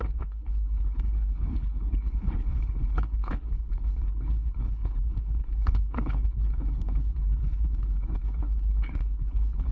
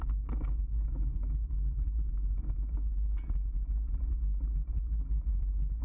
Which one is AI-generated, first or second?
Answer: first